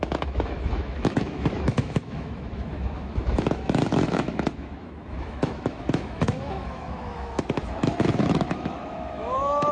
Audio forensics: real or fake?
fake